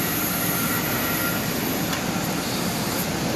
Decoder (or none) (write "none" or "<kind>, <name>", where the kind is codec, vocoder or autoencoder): none